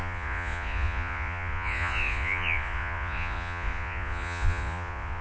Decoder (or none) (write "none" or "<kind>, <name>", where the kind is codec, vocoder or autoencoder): vocoder, Vocos